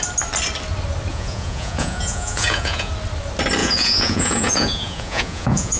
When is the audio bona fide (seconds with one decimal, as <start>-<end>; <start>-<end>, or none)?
0.0-1.1; 2.9-3.6